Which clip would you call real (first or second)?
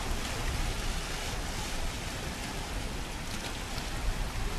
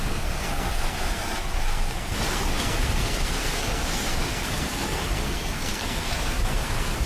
first